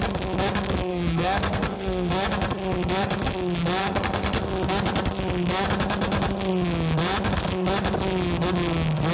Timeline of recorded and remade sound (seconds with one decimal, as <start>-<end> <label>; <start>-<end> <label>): 0.0-0.9 recorded; 0.9-2.1 remade; 2.1-3.8 recorded; 3.8-4.4 remade; 4.4-9.1 recorded